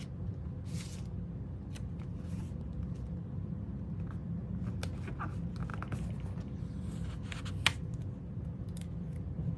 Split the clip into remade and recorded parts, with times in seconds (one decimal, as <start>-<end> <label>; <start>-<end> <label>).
0.0-9.6 recorded